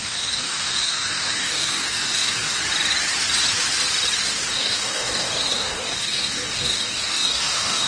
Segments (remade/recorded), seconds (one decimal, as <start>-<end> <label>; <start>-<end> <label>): 0.0-2.6 remade; 2.6-4.5 recorded; 4.5-7.9 remade